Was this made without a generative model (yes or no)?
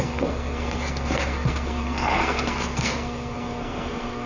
no